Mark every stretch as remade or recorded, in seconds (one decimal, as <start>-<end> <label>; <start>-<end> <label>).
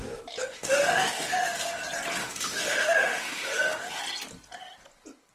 0.0-0.4 recorded; 0.4-1.8 remade; 1.8-2.2 recorded; 2.2-4.0 remade; 4.0-5.3 recorded